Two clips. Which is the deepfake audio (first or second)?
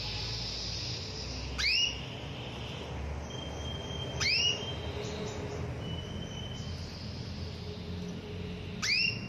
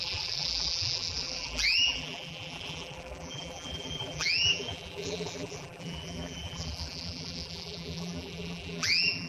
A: second